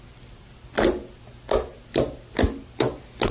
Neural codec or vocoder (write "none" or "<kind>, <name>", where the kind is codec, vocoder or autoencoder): none